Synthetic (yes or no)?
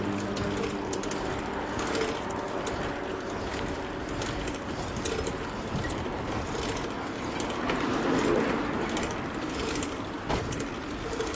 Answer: no